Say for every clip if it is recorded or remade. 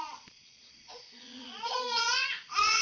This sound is remade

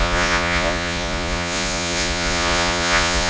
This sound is remade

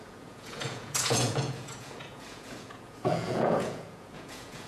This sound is remade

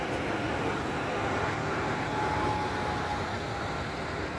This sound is recorded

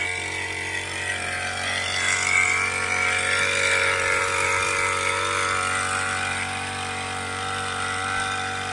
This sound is recorded